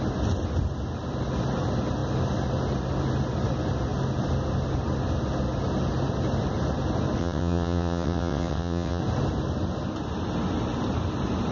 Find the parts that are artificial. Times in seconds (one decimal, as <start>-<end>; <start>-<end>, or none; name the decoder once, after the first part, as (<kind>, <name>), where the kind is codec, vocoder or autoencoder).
7.2-9.0 (vocoder, WaveNeXt)